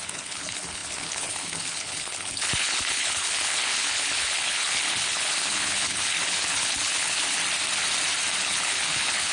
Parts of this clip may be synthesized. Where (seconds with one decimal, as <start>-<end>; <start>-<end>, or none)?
0.0-7.4; 8.4-9.3